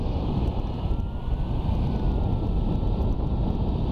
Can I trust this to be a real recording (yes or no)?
yes